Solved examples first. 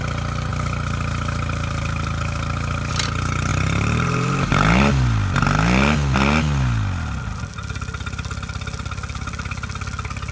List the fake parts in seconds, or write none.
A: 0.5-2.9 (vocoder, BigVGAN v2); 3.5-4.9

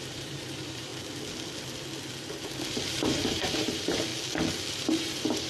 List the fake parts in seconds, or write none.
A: 0.0-0.9 (vocoder, BigVGAN v2); 2.9-4.1; 4.7-5.5

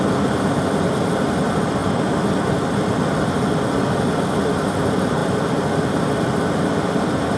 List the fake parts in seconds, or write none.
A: none

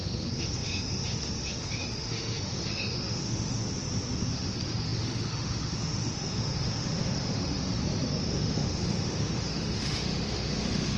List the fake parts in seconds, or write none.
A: 0.0-3.6 (autoencoder, DAC-VAE); 4.3-7.8; 8.3-11.0

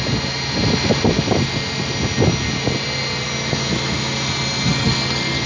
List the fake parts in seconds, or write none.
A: 4.7-5.5 (codec, SNAC)

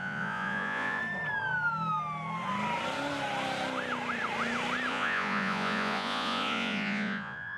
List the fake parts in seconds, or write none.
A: 0.0-1.0 (vocoder, Vocos); 4.9-7.6

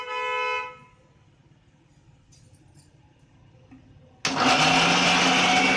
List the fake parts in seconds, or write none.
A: none

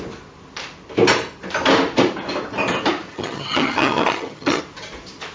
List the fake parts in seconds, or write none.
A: 3.1-4.6 (vocoder, HiFi-GAN)